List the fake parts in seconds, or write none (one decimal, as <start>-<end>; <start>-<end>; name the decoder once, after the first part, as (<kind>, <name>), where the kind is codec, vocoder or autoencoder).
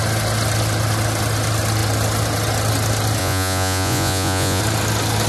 3.2-4.6 (vocoder, Vocos)